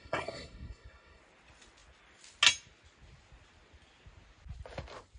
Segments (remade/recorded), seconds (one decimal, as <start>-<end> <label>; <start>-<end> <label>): 0.0-1.2 remade; 1.2-5.2 recorded